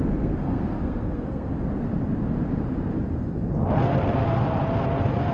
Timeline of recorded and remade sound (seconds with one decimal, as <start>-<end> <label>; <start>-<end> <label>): 0.0-1.5 remade; 1.5-5.3 recorded